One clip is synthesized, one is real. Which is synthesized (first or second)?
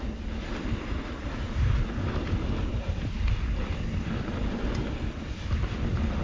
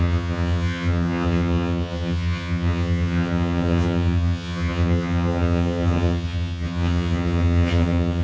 second